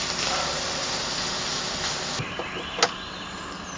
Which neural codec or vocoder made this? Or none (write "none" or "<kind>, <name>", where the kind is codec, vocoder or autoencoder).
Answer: none